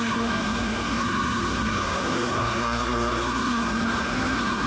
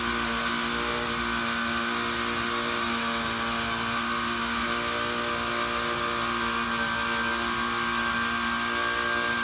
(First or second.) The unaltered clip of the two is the second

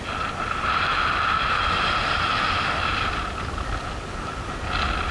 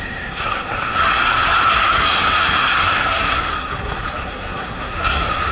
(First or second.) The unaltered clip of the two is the first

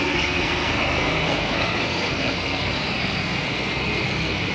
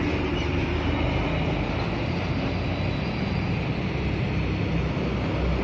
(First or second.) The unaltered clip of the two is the second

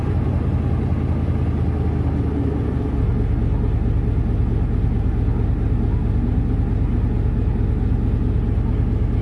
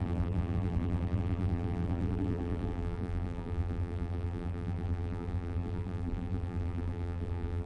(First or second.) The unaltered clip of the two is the first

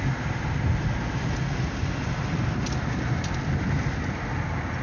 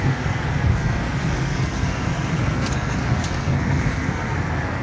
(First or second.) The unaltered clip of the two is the first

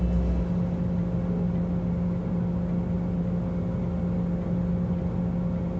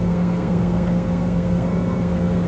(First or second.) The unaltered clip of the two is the first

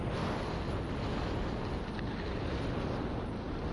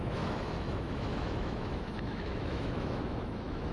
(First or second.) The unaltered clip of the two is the first